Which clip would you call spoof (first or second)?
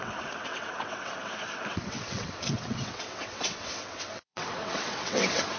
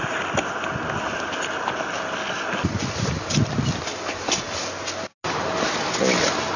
first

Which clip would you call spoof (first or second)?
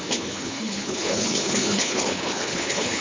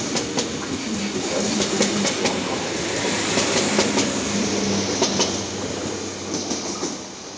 first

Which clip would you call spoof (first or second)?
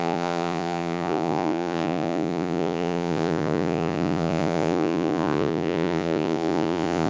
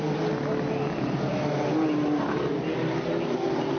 first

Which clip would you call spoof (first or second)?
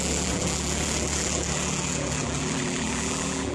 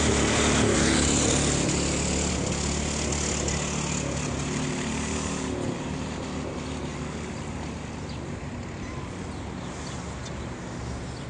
first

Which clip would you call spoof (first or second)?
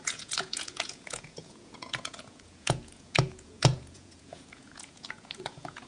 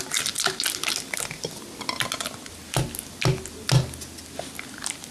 first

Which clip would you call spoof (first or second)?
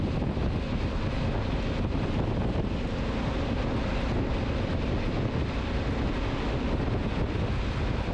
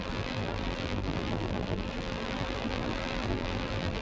second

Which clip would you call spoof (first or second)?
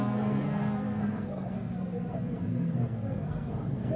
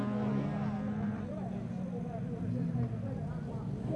first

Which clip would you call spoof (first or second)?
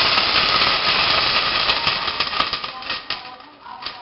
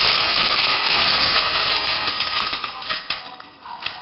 second